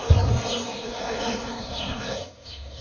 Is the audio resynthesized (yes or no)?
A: yes